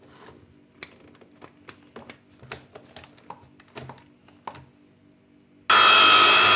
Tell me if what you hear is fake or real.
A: real